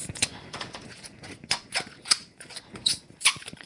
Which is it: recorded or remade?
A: remade